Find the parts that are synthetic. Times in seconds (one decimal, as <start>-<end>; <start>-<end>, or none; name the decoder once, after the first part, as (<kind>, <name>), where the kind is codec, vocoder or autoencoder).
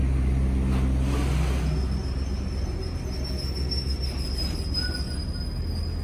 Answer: none